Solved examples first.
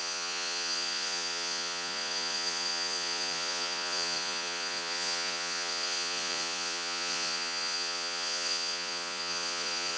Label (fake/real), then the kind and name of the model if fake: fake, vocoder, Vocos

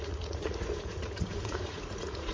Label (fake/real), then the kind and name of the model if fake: fake, vocoder, Vocos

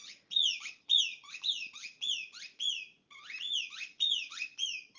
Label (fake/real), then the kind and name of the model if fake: fake, vocoder, Vocos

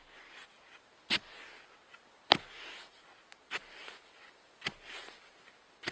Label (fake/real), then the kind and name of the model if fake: real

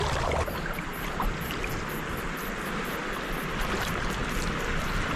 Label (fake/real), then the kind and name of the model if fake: real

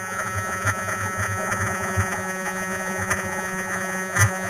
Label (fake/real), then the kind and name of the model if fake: fake, vocoder, Vocos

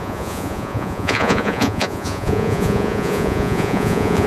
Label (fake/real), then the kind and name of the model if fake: fake, vocoder, Vocos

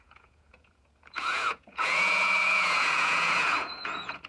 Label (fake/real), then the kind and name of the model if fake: fake, vocoder, Vocos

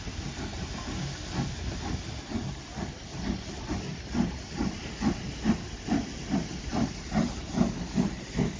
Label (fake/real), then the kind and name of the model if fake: real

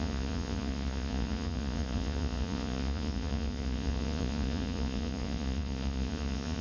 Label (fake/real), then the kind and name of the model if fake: fake, vocoder, Vocos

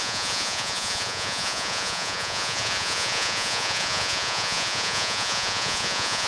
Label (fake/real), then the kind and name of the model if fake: fake, vocoder, Vocos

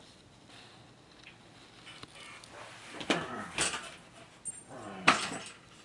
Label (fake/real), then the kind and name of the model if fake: real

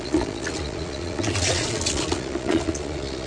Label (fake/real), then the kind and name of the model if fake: fake, vocoder, Vocos